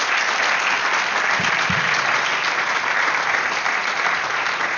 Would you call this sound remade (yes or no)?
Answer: no